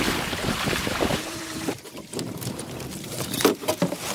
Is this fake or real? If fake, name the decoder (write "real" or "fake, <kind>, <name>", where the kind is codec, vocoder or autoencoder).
fake, vocoder, BigVGAN v2